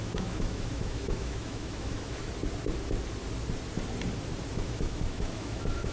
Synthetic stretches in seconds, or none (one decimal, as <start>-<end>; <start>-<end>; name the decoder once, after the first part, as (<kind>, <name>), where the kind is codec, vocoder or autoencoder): 0.0-2.2 (autoencoder, DAC-VAE); 4.5-5.9